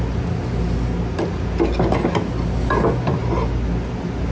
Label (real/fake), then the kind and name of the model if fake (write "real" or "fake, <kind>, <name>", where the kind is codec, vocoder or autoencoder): real